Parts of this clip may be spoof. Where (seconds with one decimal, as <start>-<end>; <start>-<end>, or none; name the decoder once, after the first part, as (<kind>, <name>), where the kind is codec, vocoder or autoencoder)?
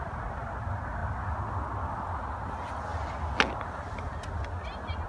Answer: none